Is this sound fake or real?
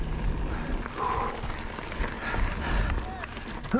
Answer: real